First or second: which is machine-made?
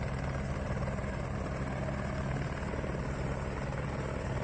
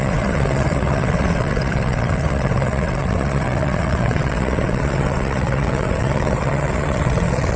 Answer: second